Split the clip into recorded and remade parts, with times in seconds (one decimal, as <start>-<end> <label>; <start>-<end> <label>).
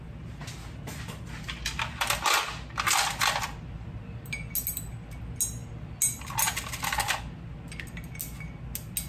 0.0-9.1 recorded